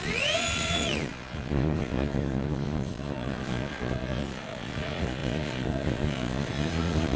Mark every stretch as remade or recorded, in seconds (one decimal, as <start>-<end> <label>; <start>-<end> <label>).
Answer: 0.0-7.2 remade